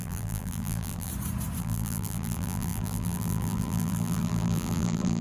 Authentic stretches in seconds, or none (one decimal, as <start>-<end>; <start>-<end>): 1.1-1.6